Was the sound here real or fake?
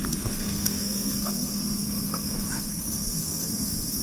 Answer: fake